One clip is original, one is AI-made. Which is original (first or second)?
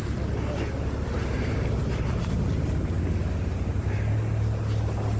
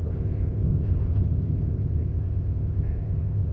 first